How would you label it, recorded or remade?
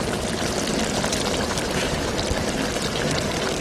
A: recorded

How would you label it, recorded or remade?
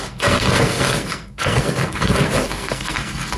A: remade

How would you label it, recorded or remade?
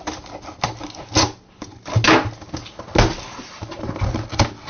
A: recorded